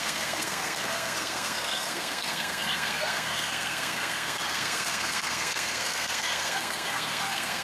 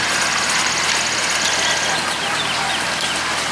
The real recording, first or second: second